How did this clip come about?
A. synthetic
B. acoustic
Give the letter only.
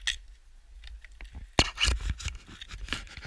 B